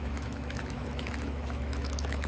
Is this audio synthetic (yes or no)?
yes